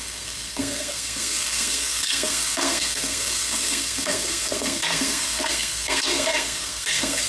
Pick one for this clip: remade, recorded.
remade